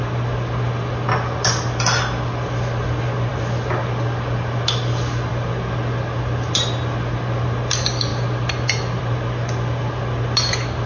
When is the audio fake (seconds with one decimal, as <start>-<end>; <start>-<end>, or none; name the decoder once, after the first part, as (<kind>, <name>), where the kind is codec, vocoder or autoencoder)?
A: none